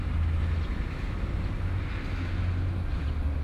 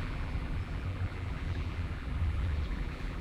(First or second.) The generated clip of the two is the second